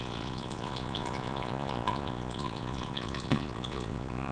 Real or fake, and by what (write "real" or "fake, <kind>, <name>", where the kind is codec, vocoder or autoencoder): fake, vocoder, Vocos